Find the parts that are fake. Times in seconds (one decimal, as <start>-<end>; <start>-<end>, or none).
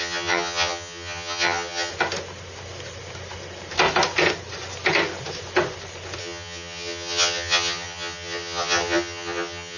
0.0-1.9; 6.2-9.8